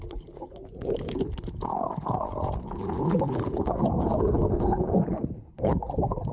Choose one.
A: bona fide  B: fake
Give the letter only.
B